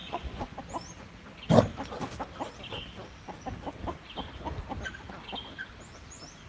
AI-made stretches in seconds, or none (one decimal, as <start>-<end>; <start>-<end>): 0.0-0.6